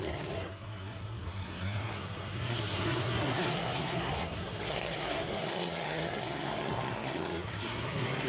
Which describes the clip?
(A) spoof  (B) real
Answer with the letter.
A